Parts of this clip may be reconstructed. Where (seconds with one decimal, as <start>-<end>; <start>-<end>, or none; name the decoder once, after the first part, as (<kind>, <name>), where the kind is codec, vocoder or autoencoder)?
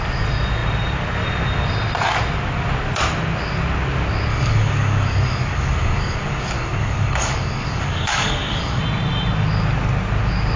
4.3-8.8 (codec, DAC)